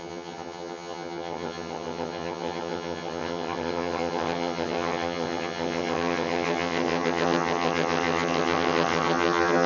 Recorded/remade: remade